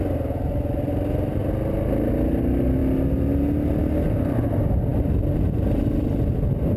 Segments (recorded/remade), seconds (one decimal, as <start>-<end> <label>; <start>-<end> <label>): 0.0-6.8 recorded